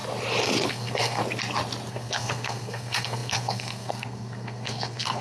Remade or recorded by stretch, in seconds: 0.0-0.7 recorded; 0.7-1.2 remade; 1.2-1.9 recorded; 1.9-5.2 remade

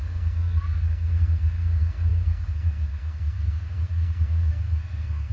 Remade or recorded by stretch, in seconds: 0.0-5.3 remade

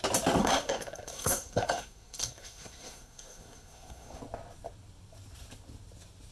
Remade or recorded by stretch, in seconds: 0.0-0.4 recorded; 0.4-4.2 remade; 4.2-6.3 recorded

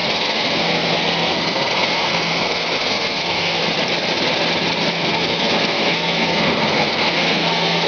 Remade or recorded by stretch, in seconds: 0.0-3.6 remade; 3.6-4.9 recorded; 4.9-7.9 remade